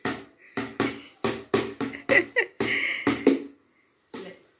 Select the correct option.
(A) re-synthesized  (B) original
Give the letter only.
B